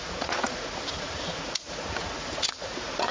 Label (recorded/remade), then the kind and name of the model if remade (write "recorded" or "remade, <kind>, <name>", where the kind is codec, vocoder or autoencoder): remade, vocoder, Vocos